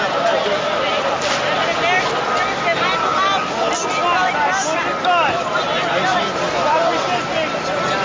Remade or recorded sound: recorded